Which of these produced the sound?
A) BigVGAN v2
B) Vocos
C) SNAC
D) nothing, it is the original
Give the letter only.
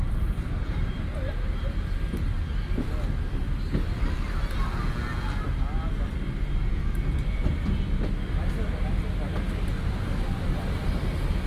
D